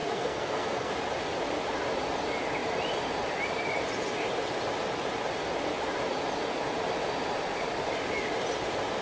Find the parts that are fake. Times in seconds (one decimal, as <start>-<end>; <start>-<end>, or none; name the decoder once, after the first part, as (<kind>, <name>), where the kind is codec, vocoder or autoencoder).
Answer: 0.0-0.9 (codec, SNAC)